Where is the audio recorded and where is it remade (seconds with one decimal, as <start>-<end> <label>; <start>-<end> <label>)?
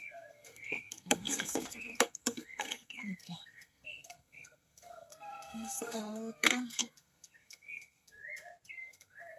0.0-8.2 remade; 8.2-8.7 recorded; 8.7-9.4 remade